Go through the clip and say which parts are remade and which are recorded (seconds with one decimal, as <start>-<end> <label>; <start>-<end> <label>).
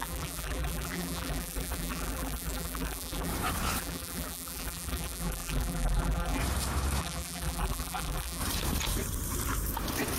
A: 0.0-3.3 remade; 3.3-3.8 recorded; 3.8-6.4 remade; 6.4-7.0 recorded; 7.0-8.4 remade; 8.4-10.2 recorded